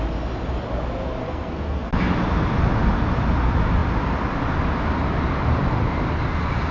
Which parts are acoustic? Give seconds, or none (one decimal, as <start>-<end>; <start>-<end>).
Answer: 0.0-1.2; 1.9-6.7